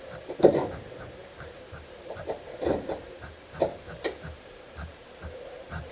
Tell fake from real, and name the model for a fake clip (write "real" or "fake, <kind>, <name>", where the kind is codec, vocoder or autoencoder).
fake, vocoder, BigVGAN v2